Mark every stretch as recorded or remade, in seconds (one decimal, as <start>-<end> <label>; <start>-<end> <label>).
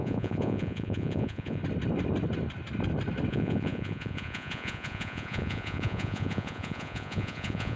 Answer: 0.0-1.6 remade; 1.6-3.3 recorded; 3.3-7.8 remade